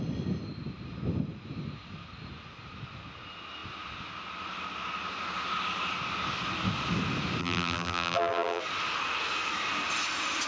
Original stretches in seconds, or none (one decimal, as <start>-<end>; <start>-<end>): 0.0-7.4; 8.6-10.5